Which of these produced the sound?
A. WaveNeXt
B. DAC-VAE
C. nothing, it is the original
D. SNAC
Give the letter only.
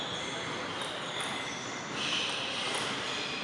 C